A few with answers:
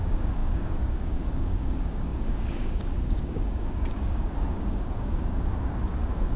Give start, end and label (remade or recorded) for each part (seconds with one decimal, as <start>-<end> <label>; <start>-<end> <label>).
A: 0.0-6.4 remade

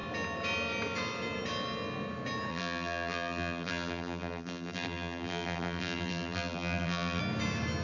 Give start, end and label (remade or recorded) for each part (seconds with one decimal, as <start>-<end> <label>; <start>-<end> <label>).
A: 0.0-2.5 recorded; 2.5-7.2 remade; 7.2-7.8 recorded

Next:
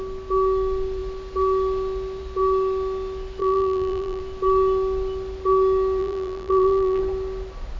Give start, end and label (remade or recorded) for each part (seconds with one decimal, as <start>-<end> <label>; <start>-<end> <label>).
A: 0.0-3.4 recorded; 3.4-4.2 remade; 4.2-6.0 recorded; 6.0-7.0 remade; 7.0-7.8 recorded